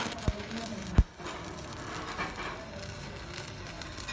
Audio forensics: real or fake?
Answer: real